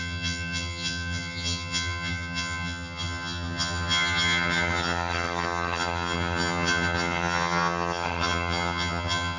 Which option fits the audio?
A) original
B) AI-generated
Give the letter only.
B